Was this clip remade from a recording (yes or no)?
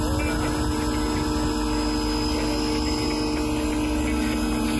no